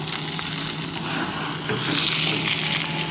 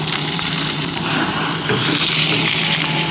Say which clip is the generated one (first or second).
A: second